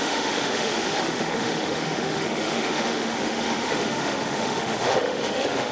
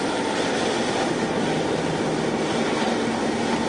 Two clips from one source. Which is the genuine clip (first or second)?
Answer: second